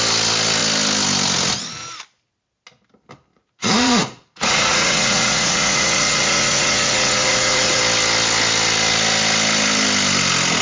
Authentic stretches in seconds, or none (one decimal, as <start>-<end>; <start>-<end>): 0.0-3.3; 7.8-10.6